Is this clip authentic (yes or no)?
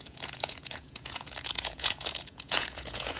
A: no